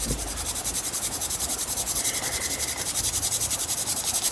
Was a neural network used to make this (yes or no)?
yes